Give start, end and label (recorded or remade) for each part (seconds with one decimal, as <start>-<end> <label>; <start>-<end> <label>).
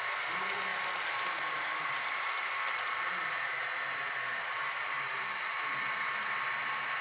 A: 0.0-0.7 recorded; 0.7-2.3 remade; 2.3-7.0 recorded